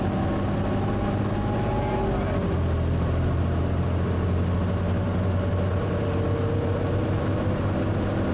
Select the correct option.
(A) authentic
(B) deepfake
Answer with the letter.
A